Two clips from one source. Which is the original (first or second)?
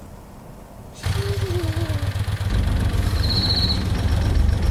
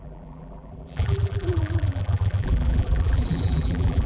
first